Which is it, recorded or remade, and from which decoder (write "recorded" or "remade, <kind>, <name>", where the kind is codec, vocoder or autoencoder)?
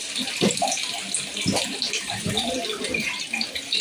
recorded